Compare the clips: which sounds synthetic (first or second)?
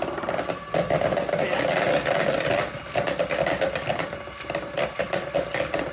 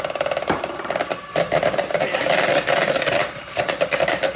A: second